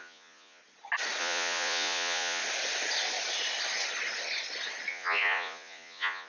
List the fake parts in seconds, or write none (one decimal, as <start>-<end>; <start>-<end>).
0.0-0.6; 1.2-2.4; 4.9-6.3